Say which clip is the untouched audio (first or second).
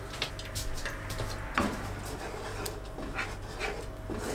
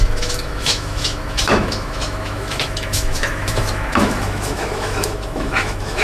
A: first